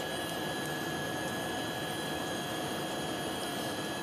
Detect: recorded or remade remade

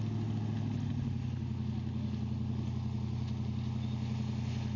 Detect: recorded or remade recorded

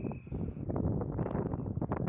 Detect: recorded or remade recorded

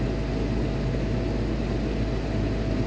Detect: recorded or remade recorded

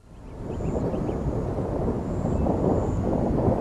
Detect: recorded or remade recorded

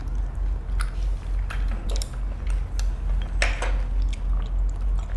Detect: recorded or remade recorded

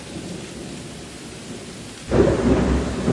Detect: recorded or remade recorded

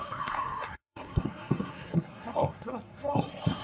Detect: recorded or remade remade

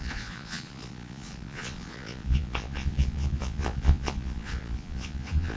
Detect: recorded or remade remade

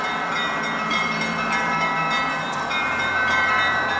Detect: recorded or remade remade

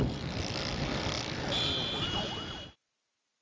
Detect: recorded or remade recorded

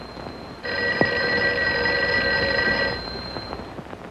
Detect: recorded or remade recorded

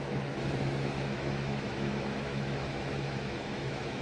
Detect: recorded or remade remade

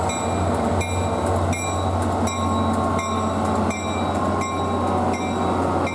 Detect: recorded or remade recorded